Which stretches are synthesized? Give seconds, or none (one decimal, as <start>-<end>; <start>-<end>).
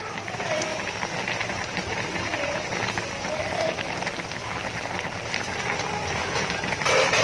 0.0-0.7; 1.4-2.7; 5.9-7.2